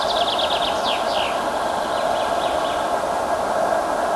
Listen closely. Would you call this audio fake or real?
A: real